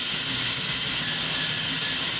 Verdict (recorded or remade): recorded